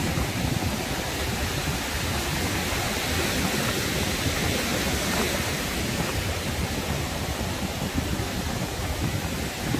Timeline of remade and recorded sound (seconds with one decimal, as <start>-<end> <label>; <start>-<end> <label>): 0.0-4.7 recorded; 4.7-7.6 remade; 7.6-9.8 recorded